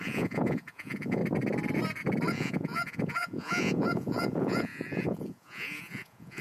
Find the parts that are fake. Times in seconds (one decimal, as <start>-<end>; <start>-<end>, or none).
0.0-1.2; 2.3-6.4